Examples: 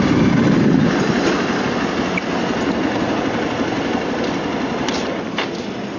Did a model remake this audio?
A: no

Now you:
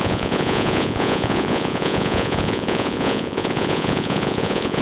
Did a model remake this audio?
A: yes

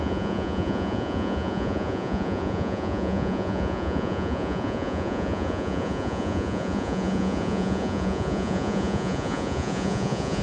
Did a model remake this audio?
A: yes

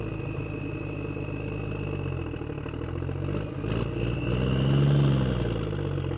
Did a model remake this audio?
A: no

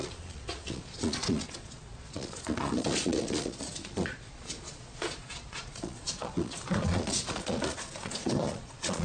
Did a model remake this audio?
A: yes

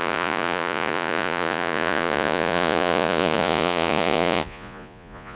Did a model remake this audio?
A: yes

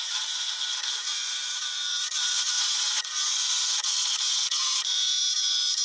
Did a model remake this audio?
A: yes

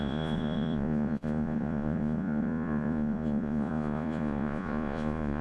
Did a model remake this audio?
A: yes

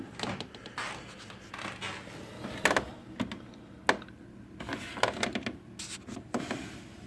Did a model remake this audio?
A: no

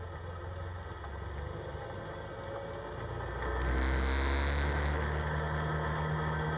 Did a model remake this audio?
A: no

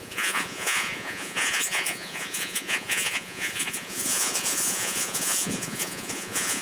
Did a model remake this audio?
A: yes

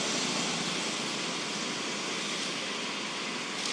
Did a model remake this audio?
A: no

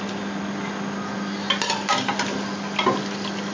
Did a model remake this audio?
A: no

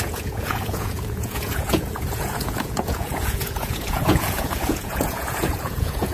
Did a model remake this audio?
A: yes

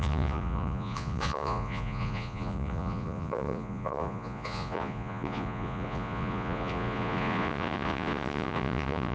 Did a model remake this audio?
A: yes